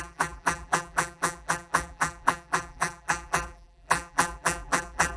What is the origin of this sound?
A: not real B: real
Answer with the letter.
A